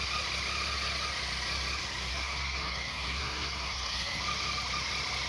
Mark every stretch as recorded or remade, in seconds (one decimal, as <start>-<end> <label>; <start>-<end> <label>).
0.0-2.1 recorded; 2.1-4.2 remade; 4.2-5.3 recorded